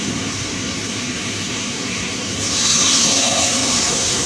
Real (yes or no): no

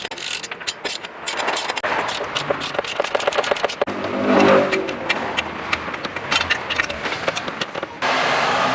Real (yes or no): yes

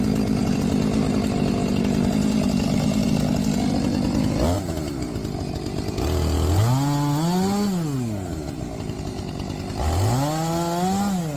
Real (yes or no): yes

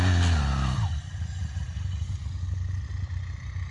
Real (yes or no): yes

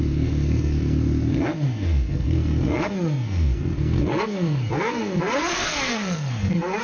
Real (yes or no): no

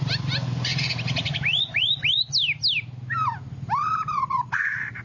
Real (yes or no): yes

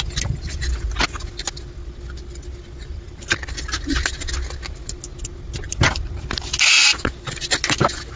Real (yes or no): yes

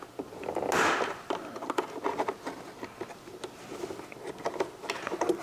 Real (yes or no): yes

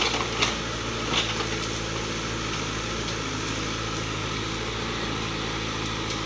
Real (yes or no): yes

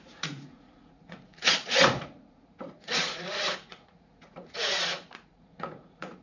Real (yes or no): no